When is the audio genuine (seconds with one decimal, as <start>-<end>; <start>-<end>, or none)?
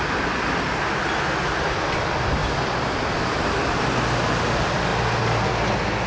0.0-6.1